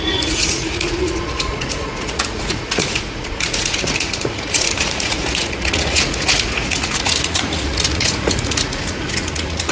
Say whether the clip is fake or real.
fake